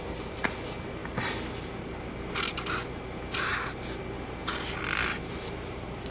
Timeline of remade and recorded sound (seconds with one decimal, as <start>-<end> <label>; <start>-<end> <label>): 0.0-5.1 recorded; 5.1-6.1 remade

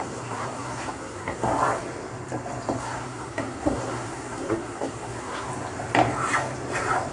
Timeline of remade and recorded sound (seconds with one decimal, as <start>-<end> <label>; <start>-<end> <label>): 0.0-1.5 remade; 1.5-2.8 recorded; 2.8-5.5 remade; 5.5-7.1 recorded

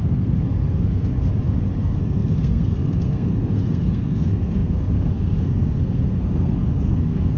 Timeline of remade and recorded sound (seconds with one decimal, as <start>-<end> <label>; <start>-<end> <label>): 0.0-1.3 remade; 1.3-1.8 recorded; 1.8-7.4 remade

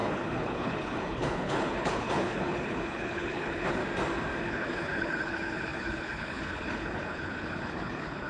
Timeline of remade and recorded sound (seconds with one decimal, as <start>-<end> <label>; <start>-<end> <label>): 0.0-3.8 remade; 3.8-4.4 recorded; 4.4-8.3 remade